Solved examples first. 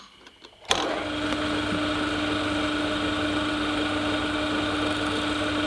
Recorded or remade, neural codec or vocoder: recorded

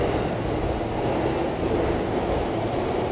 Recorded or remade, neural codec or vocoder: recorded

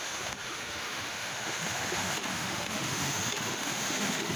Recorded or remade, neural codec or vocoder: remade, autoencoder, DAC-VAE